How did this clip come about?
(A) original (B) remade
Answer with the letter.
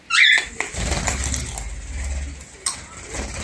A